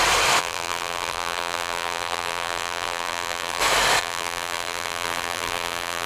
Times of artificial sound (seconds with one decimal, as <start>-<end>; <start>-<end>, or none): 0.4-3.6; 4.0-6.1